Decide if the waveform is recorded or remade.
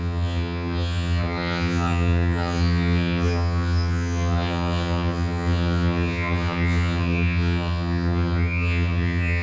remade